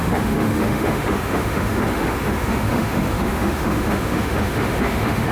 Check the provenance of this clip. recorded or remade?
remade